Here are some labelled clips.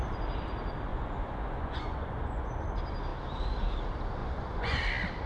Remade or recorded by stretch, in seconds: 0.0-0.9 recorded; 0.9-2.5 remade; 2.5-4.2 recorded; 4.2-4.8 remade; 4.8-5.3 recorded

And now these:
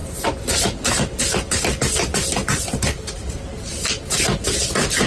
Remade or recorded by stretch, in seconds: 0.0-5.1 recorded

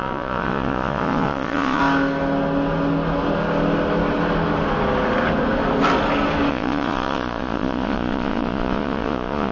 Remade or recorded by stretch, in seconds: 0.0-1.8 remade; 1.8-6.5 recorded; 6.5-9.5 remade

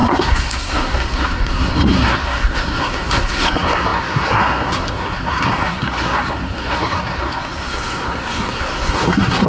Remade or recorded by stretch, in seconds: 0.0-9.5 remade

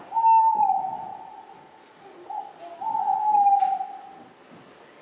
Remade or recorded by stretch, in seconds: 0.0-1.1 recorded; 1.1-2.4 remade; 2.4-5.0 recorded

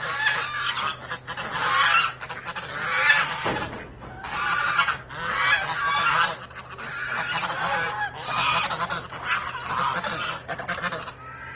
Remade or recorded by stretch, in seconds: 0.0-11.6 recorded